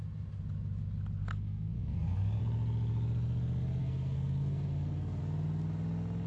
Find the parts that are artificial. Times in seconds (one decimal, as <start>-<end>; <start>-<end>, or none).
1.2-2.4; 3.8-5.2